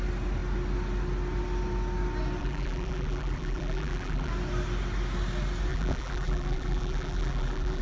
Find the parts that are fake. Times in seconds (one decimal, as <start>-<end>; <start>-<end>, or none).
2.4-4.3; 5.7-7.8